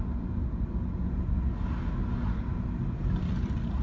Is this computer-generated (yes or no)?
no